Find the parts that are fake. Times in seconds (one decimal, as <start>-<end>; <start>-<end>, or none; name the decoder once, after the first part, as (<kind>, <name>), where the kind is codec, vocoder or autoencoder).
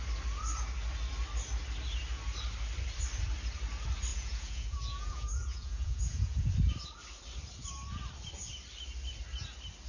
4.1-6.5 (vocoder, Vocos)